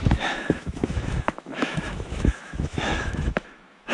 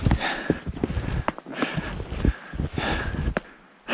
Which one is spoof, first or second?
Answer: first